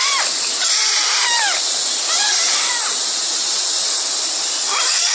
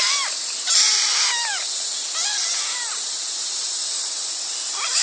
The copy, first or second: first